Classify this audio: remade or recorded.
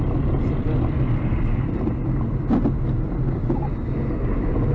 recorded